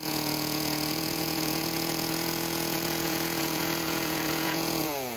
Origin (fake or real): fake